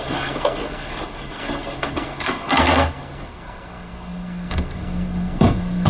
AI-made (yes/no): yes